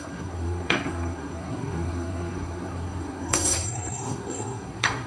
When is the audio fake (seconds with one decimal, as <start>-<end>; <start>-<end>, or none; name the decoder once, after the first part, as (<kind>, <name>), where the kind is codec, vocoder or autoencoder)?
0.0-5.1 (codec, SNAC)